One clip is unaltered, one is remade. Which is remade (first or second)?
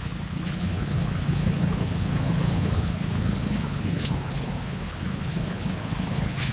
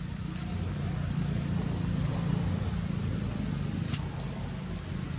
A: first